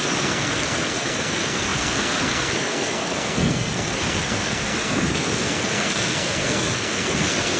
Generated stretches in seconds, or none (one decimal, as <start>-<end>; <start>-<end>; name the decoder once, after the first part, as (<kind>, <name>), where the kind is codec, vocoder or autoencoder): 0.0-7.6 (codec, SNAC)